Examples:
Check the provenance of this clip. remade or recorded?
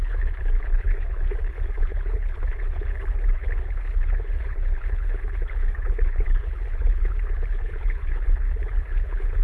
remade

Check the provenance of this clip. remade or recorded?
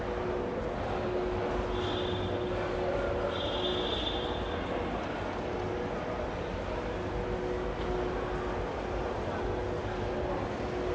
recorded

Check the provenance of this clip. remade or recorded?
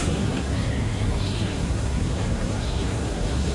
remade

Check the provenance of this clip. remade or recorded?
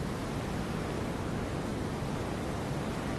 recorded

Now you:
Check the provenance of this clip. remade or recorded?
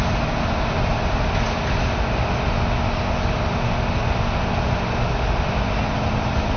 recorded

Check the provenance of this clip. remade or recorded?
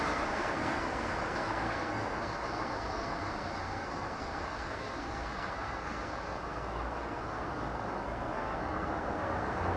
remade